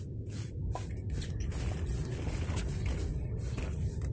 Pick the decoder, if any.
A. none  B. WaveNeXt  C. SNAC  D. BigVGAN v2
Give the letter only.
A